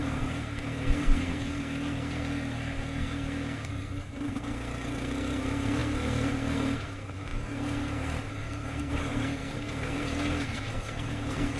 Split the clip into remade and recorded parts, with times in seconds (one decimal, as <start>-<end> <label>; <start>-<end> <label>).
0.0-11.6 remade